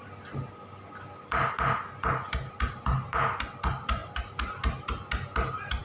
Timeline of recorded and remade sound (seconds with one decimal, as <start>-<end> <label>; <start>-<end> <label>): 0.0-5.8 recorded